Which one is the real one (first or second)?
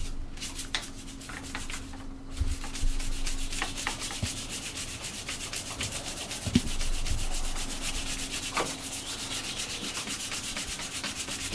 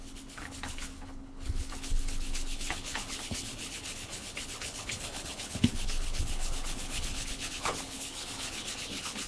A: first